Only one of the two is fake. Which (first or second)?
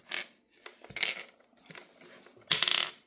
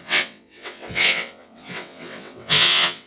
second